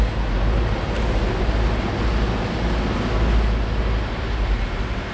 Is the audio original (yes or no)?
yes